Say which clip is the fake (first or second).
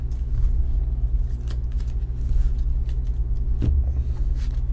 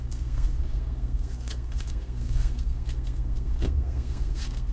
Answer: second